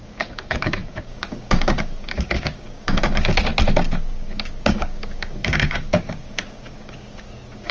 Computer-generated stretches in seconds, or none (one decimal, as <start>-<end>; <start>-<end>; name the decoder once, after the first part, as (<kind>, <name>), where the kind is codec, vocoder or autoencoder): 0.0-3.5 (codec, DAC); 4.1-7.7